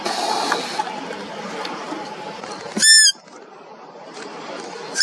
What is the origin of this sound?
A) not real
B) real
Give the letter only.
B